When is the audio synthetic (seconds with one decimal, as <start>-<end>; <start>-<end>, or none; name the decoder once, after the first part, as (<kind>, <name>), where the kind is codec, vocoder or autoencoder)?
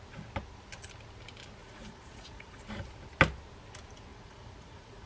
1.6-2.6 (vocoder, Vocos); 4.1-5.1